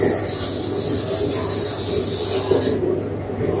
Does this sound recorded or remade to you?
recorded